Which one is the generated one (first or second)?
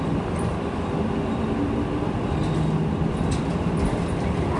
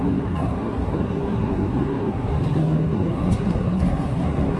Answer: second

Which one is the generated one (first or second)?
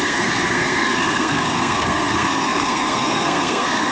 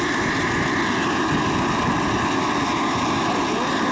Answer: first